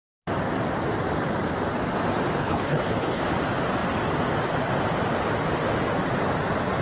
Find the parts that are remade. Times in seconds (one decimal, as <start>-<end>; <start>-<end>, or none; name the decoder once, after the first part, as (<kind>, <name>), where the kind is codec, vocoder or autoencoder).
2.4-3.2 (codec, HILCodec)